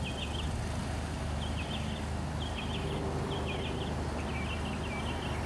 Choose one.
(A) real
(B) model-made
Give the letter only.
A